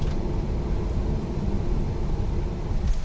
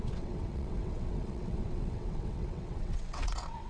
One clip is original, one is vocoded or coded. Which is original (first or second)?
first